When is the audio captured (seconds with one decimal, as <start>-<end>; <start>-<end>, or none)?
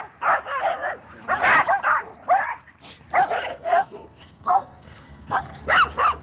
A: 0.0-3.5; 5.4-6.2